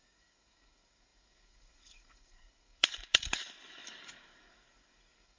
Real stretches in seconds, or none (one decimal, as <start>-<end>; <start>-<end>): none